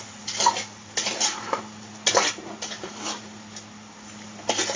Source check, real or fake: real